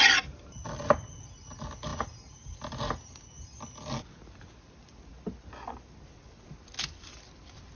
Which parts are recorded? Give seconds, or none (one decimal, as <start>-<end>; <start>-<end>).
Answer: 0.0-7.7